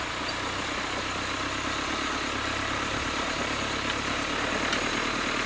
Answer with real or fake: real